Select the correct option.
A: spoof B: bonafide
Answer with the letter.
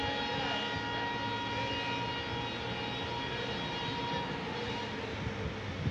B